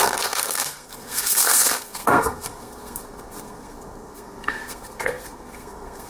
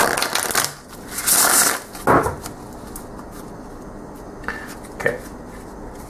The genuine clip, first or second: second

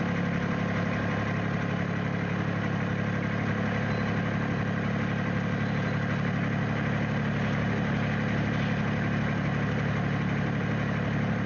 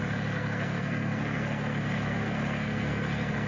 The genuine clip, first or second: first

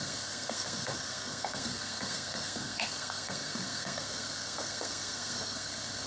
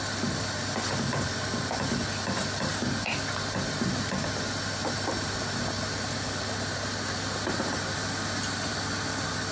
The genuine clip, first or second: second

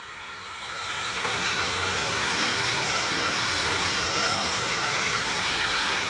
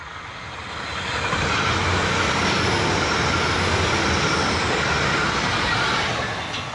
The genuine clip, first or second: second